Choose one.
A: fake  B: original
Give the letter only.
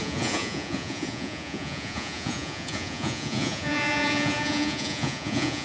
A